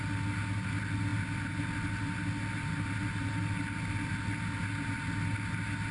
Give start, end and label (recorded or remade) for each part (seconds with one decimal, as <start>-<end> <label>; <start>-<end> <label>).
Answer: 0.0-5.9 recorded